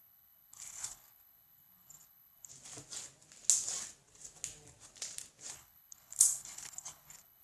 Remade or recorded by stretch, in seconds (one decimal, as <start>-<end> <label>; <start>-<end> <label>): 0.0-2.5 remade; 2.5-5.5 recorded; 5.5-7.4 remade